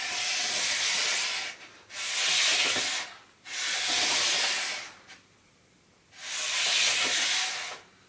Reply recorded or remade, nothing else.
recorded